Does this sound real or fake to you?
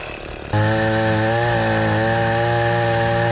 real